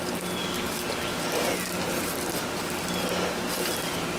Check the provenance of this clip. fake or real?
real